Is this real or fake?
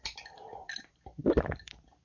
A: fake